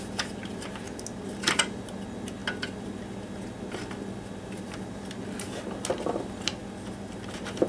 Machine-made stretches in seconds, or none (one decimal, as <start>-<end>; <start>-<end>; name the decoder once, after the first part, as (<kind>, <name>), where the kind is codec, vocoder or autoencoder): none